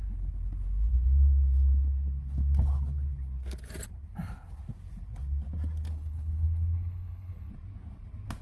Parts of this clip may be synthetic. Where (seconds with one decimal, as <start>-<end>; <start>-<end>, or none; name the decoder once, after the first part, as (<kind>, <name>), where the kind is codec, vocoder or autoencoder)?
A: 5.9-7.5 (codec, HILCodec)